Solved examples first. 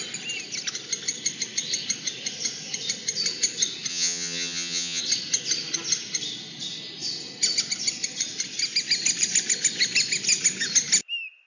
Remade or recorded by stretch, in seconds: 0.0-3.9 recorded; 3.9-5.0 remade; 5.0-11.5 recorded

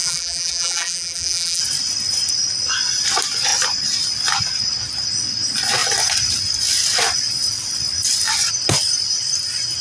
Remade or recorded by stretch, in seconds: 0.0-1.6 remade; 1.6-9.8 recorded

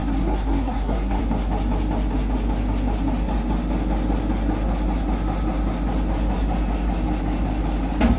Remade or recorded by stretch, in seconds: 0.0-1.2 remade; 1.2-8.2 recorded